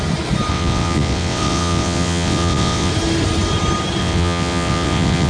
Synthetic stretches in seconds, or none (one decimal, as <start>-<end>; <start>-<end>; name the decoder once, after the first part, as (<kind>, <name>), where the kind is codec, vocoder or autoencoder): 0.5-2.9 (vocoder, WaveNeXt); 4.0-5.3